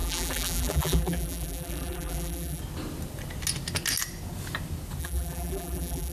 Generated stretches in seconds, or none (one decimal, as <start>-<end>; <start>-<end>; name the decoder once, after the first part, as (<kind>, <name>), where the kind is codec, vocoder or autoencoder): 0.0-2.6 (vocoder, BigVGAN v2); 5.0-6.1